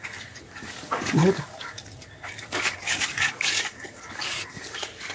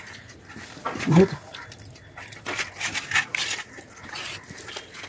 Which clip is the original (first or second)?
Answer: second